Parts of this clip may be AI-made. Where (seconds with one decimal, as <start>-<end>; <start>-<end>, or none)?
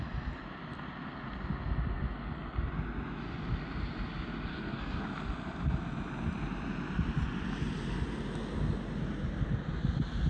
4.5-5.0